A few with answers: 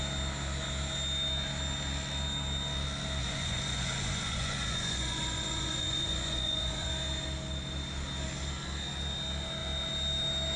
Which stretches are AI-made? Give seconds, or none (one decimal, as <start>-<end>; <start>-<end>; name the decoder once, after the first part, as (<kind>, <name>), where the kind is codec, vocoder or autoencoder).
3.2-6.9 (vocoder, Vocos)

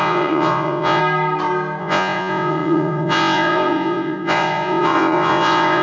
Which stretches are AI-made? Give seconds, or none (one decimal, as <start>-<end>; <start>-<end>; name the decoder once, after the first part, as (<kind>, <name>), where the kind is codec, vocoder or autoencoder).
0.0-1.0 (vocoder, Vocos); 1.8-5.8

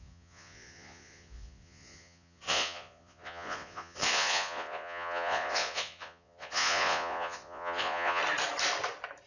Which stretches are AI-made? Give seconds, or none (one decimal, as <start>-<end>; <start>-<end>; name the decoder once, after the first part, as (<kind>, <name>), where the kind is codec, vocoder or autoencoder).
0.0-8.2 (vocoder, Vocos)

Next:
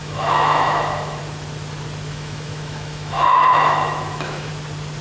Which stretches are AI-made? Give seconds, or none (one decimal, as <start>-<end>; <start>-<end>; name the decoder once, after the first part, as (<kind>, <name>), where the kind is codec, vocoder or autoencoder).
0.0-1.2 (autoencoder, DAC-VAE); 2.1-4.5

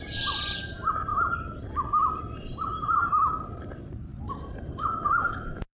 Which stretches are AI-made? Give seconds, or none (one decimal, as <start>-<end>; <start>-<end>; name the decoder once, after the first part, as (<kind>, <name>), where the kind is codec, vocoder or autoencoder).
0.0-1.1 (vocoder, BigVGAN v2); 2.2-3.1; 3.6-4.1; 4.7-5.8